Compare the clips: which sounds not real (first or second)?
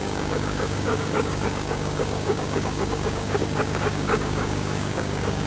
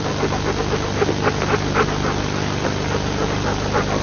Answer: first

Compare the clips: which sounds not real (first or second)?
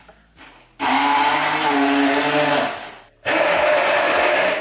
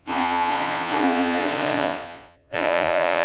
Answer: second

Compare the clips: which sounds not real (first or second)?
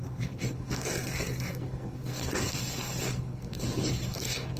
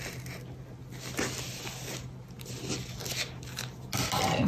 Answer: first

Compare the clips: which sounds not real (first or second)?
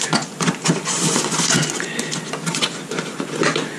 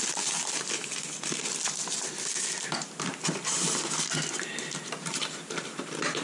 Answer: first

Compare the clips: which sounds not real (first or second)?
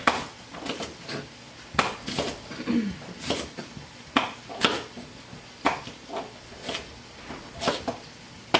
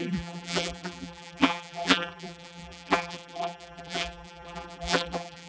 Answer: second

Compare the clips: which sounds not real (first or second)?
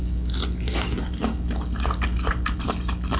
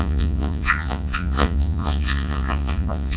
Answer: second